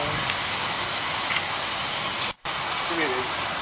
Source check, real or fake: real